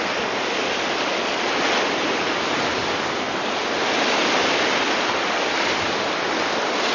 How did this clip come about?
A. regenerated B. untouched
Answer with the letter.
B